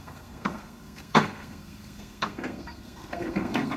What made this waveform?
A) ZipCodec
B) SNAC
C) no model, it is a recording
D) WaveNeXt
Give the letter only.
B